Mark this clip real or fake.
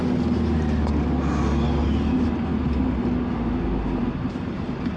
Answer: real